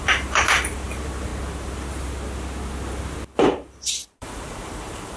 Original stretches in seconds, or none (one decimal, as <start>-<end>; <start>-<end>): 1.3-3.3